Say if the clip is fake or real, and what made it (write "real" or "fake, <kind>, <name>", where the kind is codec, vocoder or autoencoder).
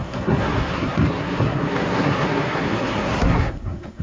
fake, codec, SNAC